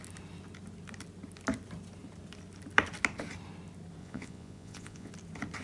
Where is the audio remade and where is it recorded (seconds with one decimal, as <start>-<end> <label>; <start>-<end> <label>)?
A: 0.0-4.0 recorded; 4.0-5.1 remade; 5.1-5.6 recorded